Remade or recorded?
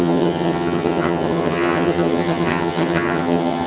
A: remade